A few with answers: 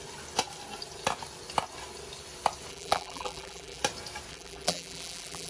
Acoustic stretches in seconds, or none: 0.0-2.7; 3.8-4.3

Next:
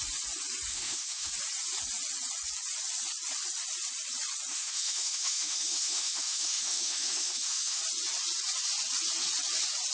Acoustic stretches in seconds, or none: 0.0-0.7; 1.3-4.5; 7.8-9.9

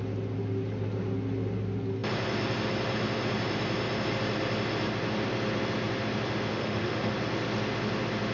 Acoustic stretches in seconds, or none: 0.0-6.5; 7.1-8.3

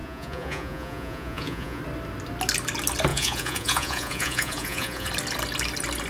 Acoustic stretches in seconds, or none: 1.8-3.1; 5.1-6.1

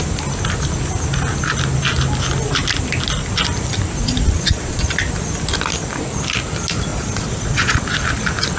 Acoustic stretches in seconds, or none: 0.0-4.0; 4.9-6.9; 7.8-8.6

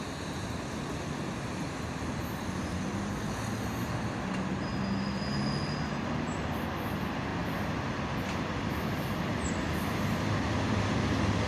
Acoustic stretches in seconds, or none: 0.0-11.5

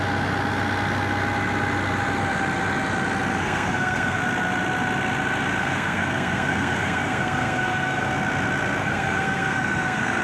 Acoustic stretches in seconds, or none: 0.0-3.3; 4.2-5.6; 8.1-8.8